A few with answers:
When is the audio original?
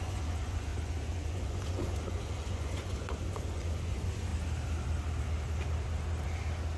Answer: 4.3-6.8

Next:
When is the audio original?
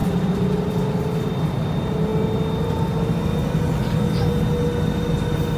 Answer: 0.7-5.6